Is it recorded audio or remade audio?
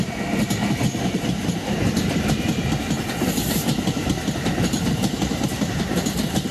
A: recorded